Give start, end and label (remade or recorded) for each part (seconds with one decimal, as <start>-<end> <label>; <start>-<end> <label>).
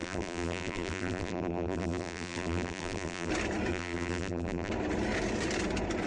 0.0-3.3 remade; 3.3-3.7 recorded; 3.7-4.7 remade; 4.7-6.1 recorded